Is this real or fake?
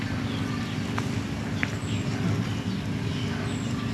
real